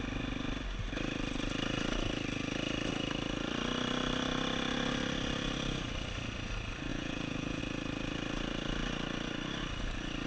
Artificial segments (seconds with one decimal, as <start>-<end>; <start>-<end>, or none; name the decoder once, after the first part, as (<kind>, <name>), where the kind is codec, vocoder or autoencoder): 6.9-7.6 (vocoder, Vocos)

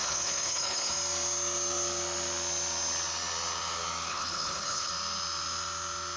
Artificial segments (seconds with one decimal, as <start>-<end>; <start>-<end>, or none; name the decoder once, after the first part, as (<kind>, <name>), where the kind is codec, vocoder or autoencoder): 0.0-0.9 (codec, HILCodec); 4.1-4.9

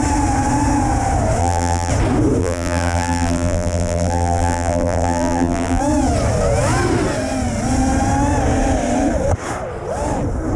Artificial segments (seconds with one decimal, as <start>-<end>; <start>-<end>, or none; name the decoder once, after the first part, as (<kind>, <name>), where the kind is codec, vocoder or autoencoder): 1.4-1.9 (vocoder, BigVGAN v2); 2.4-5.8

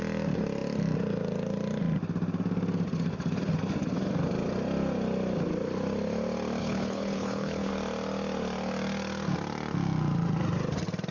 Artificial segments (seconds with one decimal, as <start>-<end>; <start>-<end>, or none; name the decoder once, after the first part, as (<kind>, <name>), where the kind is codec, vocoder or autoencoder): 6.6-7.7 (codec, HILCodec)

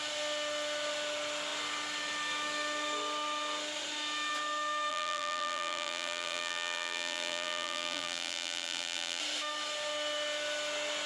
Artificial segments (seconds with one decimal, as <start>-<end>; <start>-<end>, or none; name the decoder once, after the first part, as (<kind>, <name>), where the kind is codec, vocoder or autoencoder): 4.9-9.2 (vocoder, BigVGAN v2)

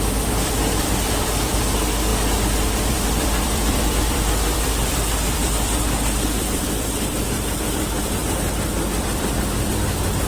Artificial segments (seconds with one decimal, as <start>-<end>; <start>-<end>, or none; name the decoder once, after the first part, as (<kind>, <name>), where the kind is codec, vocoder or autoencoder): 0.0-8.2 (vocoder, BigVGAN v2); 9.0-10.3

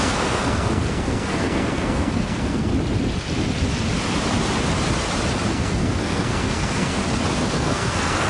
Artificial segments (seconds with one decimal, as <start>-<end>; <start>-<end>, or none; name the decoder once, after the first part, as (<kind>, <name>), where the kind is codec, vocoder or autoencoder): 0.0-2.7 (codec, SNAC); 5.5-7.0; 7.5-8.3

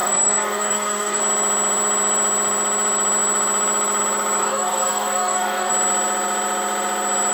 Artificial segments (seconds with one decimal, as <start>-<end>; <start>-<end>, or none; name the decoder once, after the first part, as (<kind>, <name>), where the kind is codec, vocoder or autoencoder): 0.0-1.2 (codec, DAC); 4.4-5.7